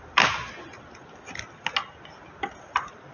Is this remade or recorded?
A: recorded